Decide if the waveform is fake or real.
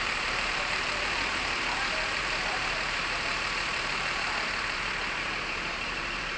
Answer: fake